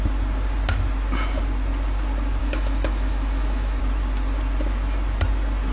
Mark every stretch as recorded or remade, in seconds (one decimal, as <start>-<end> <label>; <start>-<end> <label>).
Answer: 0.0-2.4 recorded; 2.4-3.8 remade; 3.8-5.7 recorded